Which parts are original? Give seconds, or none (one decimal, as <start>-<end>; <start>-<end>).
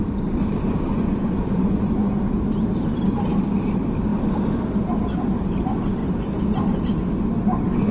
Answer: 0.0-0.9; 2.2-7.9